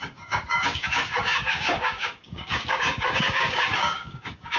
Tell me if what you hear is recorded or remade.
remade